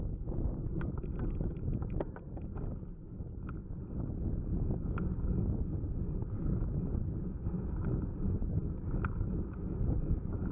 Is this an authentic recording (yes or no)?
yes